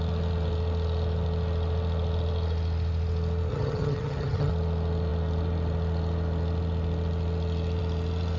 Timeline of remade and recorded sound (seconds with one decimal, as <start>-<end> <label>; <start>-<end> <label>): 0.0-3.5 recorded; 3.5-4.5 remade; 4.5-8.4 recorded